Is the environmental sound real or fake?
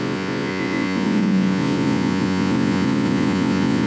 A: fake